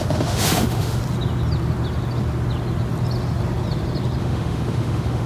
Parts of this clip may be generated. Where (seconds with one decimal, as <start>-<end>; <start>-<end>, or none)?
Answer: 0.0-1.0; 4.2-5.3